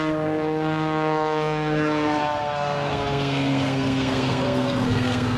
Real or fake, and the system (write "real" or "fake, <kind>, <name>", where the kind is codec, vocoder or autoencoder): fake, codec, SNAC